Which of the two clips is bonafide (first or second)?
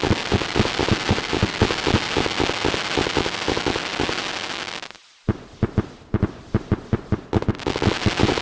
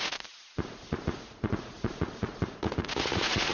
first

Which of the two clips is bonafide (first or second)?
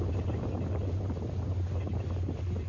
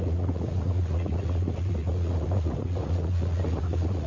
first